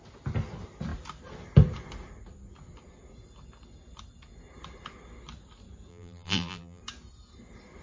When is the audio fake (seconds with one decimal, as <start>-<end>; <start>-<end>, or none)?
5.9-6.8